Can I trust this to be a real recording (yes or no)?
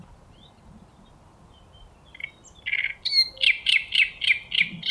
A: yes